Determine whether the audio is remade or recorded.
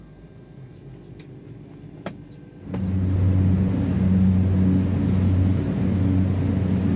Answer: recorded